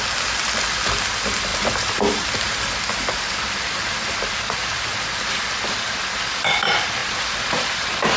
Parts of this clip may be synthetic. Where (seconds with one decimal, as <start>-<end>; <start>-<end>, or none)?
1.5-3.3; 4.0-4.9; 7.0-8.2